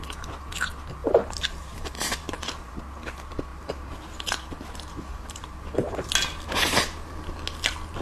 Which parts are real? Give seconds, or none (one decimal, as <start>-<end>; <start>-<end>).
0.0-1.0; 2.8-3.5; 6.1-8.0